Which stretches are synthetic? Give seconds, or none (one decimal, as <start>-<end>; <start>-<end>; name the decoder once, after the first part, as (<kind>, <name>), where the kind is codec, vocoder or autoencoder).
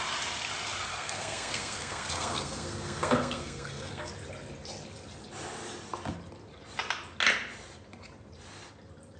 0.9-4.1 (codec, SNAC)